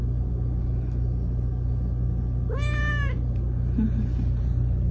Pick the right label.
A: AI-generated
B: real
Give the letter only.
B